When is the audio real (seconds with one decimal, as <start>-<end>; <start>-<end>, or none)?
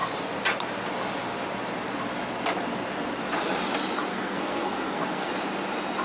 0.0-4.1; 5.3-6.0